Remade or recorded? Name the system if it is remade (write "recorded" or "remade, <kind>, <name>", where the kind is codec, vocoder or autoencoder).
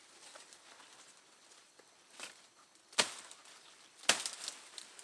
recorded